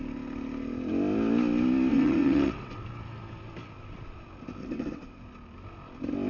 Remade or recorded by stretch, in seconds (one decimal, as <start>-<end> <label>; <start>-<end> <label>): 0.0-1.9 recorded; 1.9-2.8 remade; 2.8-4.6 recorded; 4.6-5.2 remade; 5.2-6.3 recorded